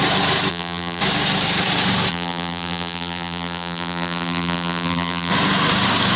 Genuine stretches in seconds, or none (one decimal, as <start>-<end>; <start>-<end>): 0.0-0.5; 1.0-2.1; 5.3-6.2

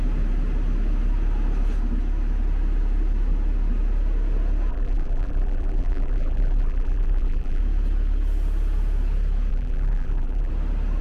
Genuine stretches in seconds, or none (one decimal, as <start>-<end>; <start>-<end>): 0.0-4.7; 7.6-9.5; 10.5-11.0

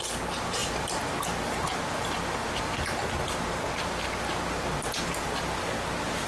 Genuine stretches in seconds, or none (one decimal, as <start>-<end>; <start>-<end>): 0.0-6.3